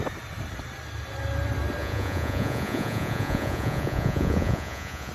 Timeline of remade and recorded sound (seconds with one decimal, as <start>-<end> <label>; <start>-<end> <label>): 0.0-1.8 recorded; 1.8-5.1 remade